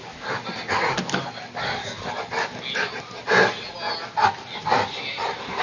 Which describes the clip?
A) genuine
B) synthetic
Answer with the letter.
A